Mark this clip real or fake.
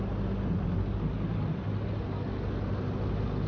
real